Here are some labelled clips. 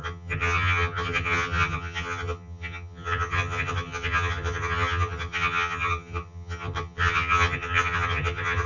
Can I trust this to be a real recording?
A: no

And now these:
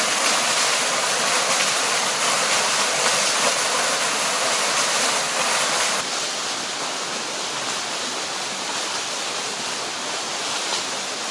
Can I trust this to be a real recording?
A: yes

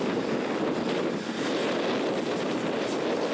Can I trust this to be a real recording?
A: yes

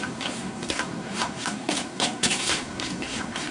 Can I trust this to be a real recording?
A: no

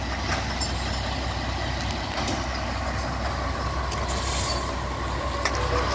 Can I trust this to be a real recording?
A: yes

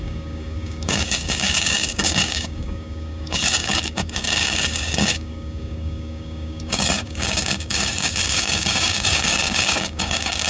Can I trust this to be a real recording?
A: no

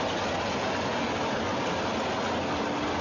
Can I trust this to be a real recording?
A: yes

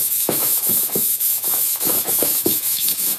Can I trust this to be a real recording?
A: no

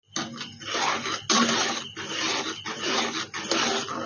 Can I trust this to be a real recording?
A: yes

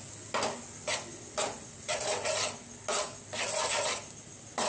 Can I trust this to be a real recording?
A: yes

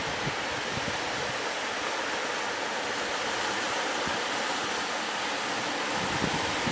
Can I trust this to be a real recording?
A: yes